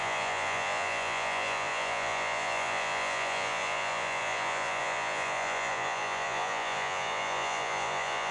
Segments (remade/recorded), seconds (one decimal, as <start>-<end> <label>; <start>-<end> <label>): 0.0-8.3 remade